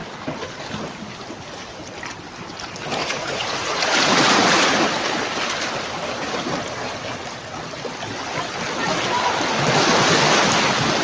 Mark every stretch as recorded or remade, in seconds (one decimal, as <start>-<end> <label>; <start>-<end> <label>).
0.0-3.0 recorded; 3.0-4.9 remade; 4.9-11.0 recorded